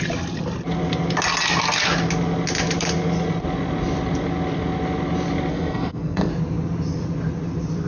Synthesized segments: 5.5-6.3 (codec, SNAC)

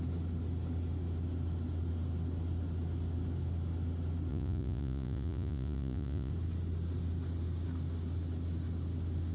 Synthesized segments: 4.3-6.3 (vocoder, Vocos)